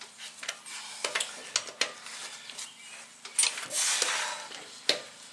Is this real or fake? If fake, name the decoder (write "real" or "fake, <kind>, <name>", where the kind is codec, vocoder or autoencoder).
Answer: real